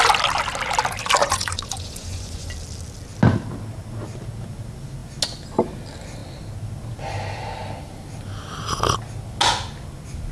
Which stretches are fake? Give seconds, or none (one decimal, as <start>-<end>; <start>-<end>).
1.2-2.5